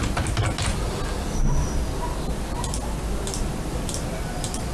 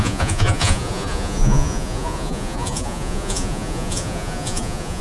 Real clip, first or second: first